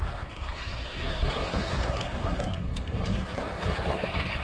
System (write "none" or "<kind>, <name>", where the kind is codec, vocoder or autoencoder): codec, SNAC